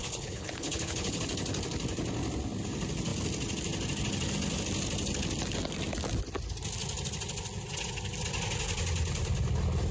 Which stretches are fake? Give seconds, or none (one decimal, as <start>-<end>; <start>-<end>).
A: 0.0-1.2